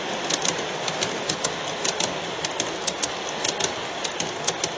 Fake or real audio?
real